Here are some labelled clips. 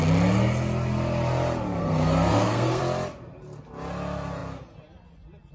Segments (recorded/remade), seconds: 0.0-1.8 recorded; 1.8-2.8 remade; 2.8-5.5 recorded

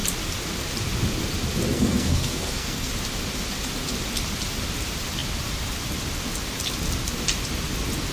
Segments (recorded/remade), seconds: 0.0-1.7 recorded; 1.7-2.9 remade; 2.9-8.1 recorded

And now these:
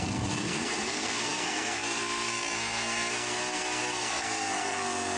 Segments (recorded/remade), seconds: 0.0-5.2 remade

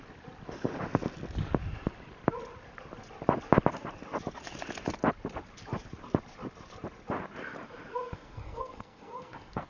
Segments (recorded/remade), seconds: 0.0-7.9 recorded; 7.9-9.7 remade

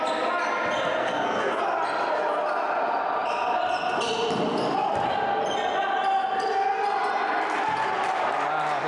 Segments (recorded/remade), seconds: 0.0-1.0 recorded; 1.0-1.6 remade; 1.6-8.9 recorded

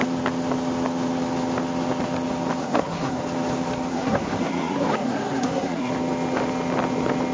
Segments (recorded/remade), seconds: 0.0-2.6 recorded; 2.6-3.2 remade; 3.2-3.9 recorded; 3.9-5.9 remade; 5.9-7.3 recorded

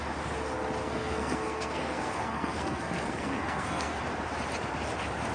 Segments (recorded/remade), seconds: 0.0-0.8 recorded; 0.8-4.0 remade; 4.0-5.3 recorded